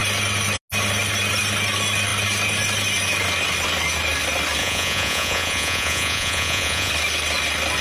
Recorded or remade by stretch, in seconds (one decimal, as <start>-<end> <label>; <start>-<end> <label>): 0.0-4.6 recorded; 4.6-6.9 remade; 6.9-7.8 recorded